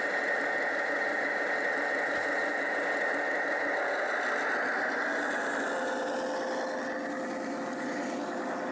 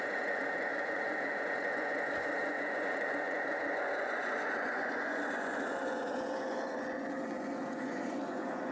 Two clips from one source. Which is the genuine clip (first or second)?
first